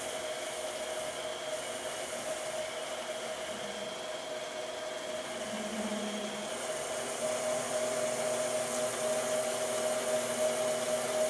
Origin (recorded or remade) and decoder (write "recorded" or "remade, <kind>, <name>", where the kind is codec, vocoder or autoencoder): recorded